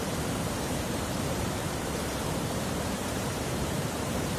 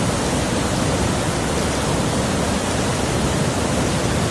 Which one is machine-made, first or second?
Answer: first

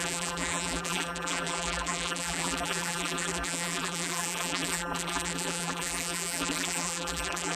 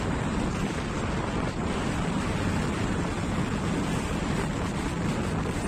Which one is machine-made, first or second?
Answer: first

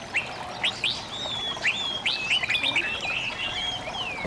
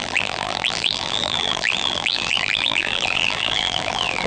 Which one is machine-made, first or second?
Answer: second